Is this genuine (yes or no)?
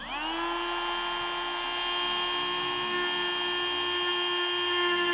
yes